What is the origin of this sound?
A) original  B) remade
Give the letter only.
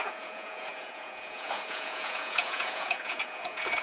B